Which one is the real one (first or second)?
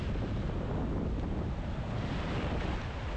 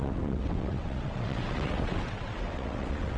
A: first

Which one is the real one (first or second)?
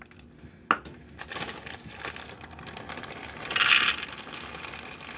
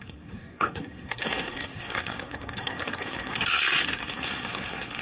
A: first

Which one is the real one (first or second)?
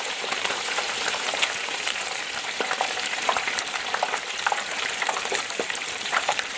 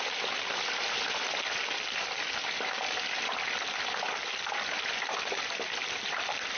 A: second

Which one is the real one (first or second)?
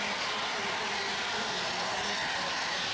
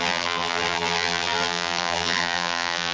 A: first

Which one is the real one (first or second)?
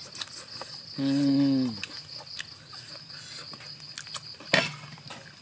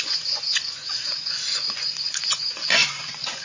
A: first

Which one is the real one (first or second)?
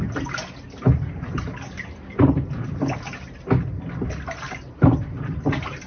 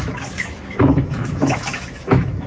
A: first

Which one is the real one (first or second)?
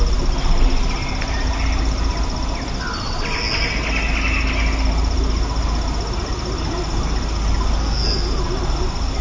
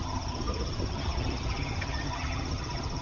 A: first